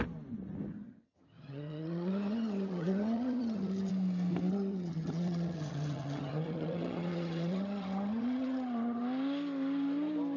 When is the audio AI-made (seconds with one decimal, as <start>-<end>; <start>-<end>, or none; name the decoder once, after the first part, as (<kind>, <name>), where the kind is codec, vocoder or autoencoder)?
0.7-3.9 (vocoder, HiFi-GAN); 4.5-9.0